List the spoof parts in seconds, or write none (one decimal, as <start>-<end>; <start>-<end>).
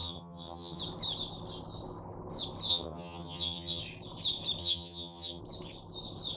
0.0-0.8; 2.7-3.8; 4.6-5.4